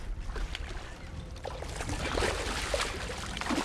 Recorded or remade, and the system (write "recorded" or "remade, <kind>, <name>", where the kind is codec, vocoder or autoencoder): recorded